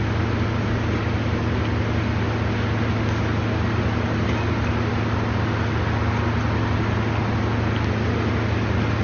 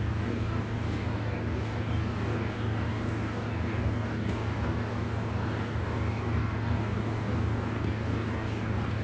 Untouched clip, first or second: first